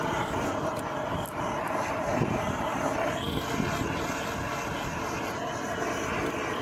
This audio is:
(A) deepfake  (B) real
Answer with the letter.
B